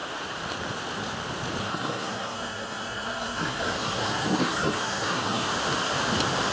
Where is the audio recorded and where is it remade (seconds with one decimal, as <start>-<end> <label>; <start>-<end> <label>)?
0.0-1.6 recorded; 1.6-5.5 remade; 5.5-6.5 recorded